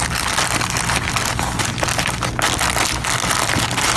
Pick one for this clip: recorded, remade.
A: recorded